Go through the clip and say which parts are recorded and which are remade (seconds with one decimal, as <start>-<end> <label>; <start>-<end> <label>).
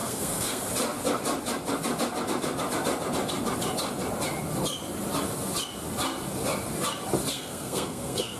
0.0-0.6 remade; 0.6-7.3 recorded; 7.3-8.4 remade